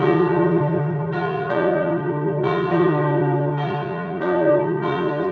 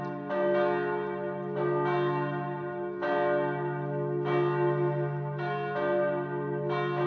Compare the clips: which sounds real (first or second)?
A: second